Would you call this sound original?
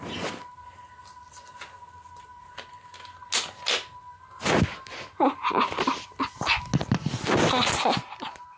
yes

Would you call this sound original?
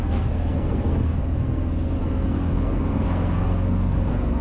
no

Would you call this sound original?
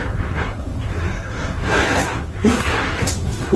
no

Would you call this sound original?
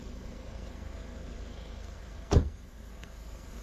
no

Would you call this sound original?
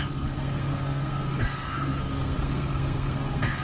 no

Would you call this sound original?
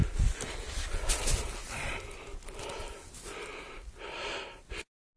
yes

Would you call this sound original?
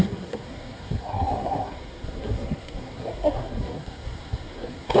no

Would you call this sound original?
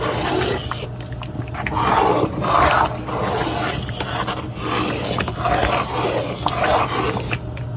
yes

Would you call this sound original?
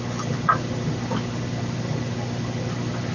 yes